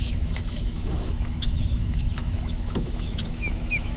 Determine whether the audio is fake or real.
fake